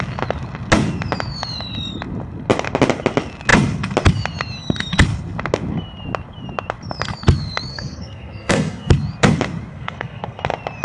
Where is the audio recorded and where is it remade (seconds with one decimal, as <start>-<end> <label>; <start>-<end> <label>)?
0.0-7.7 recorded; 7.7-8.9 remade; 8.9-9.7 recorded; 9.7-10.4 remade; 10.4-10.8 recorded